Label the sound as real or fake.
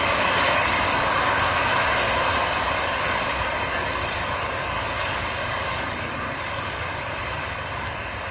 fake